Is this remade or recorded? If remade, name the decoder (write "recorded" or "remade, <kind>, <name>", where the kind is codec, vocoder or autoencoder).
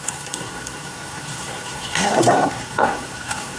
remade, codec, SNAC